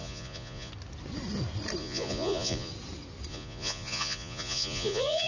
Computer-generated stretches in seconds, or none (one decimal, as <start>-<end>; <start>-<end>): 0.0-0.7; 1.8-2.7; 3.3-5.3